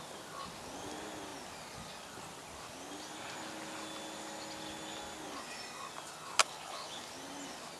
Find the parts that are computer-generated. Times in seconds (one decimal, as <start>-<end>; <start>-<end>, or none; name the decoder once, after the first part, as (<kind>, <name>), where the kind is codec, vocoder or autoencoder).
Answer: 6.4-7.1 (codec, HILCodec)